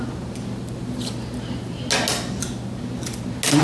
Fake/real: real